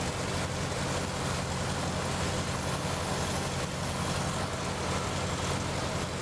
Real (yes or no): yes